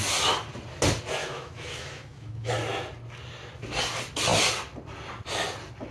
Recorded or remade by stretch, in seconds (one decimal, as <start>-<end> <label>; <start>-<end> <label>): 0.0-1.2 recorded; 1.2-2.5 remade; 2.5-5.9 recorded